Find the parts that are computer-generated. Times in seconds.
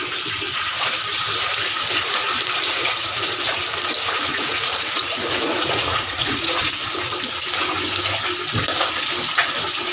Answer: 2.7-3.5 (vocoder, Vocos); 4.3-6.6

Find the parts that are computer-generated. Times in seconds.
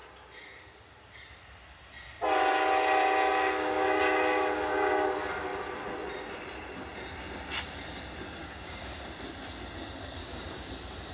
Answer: 3.3-4.9 (codec, DAC); 8.4-9.0; 10.2-10.7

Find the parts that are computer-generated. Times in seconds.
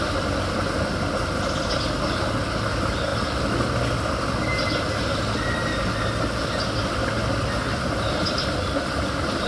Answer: none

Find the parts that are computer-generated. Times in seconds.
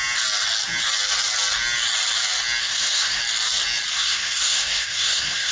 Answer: 2.6-3.2 (codec, SNAC); 3.9-5.5